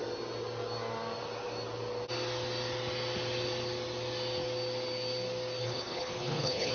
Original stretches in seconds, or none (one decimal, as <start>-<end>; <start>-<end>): 0.0-5.6